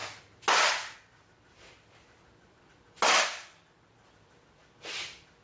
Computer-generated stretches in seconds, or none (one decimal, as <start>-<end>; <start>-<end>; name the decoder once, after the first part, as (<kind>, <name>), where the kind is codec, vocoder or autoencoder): none